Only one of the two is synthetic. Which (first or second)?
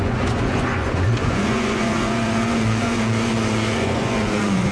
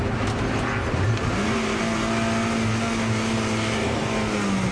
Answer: first